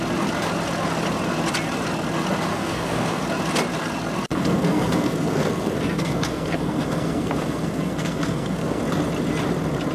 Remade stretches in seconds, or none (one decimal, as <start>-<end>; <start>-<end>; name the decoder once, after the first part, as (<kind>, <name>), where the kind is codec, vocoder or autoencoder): 2.5-3.2 (codec, SNAC); 4.3-8.8